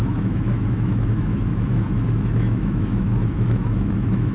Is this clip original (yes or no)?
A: no